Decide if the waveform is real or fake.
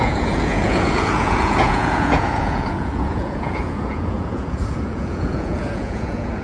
fake